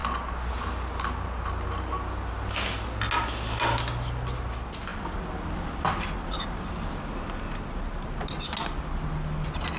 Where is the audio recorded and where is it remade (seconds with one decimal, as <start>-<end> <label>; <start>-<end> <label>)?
0.0-9.8 recorded